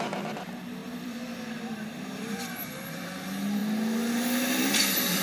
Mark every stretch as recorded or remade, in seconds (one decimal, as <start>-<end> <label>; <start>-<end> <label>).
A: 0.0-0.8 recorded; 0.8-2.8 remade; 2.8-5.2 recorded